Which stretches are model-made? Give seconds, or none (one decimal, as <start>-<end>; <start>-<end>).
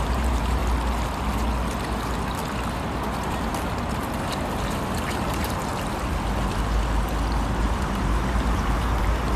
0.0-0.6; 4.3-5.7; 7.6-9.4